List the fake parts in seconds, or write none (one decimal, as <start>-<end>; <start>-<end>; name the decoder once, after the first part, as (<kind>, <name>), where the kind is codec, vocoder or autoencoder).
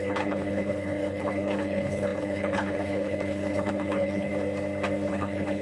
0.0-4.3 (codec, HILCodec); 5.1-5.6